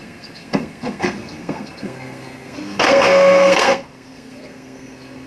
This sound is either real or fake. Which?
fake